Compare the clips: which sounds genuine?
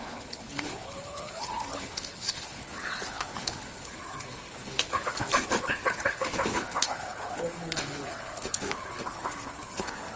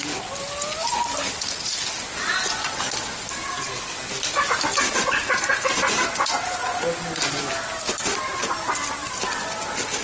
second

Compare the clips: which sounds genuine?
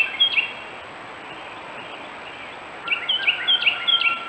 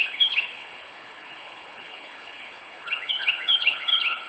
first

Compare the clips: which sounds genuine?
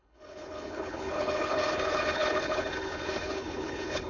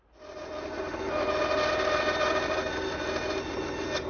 second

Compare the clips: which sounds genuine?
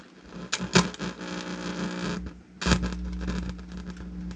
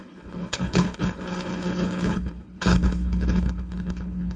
first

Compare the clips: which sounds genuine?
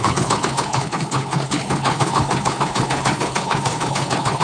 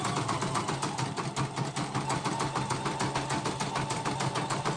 second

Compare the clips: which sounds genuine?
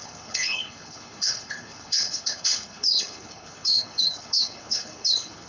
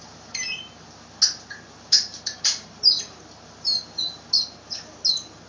second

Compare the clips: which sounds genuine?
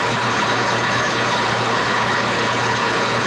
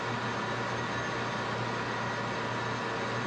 second